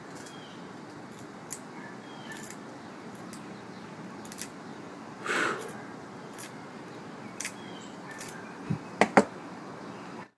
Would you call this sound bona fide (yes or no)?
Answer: yes